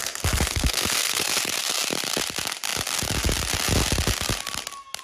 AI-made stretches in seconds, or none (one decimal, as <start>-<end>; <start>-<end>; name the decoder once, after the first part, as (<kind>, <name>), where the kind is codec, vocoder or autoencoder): 0.0-1.4 (codec, SNAC)